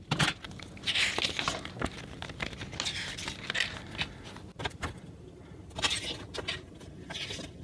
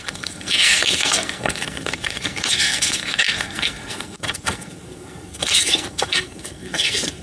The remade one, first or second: second